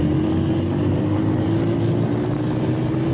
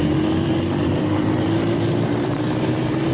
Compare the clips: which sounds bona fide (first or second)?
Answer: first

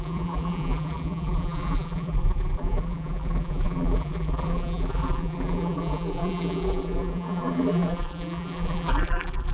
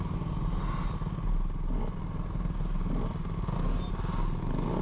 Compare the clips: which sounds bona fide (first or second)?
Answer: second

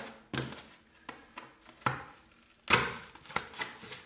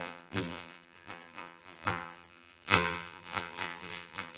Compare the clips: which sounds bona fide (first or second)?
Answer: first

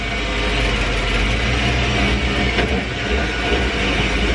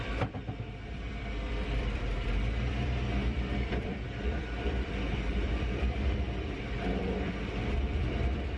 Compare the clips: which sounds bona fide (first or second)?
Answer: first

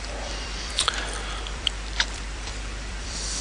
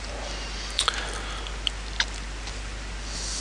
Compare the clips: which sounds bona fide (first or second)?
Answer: second